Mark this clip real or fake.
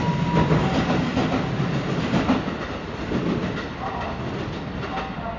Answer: real